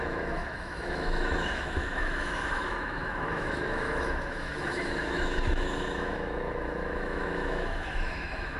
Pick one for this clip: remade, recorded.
remade